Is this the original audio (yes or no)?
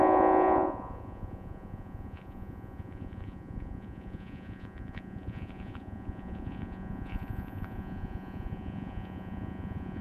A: no